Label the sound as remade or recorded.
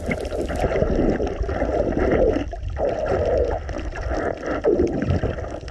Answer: recorded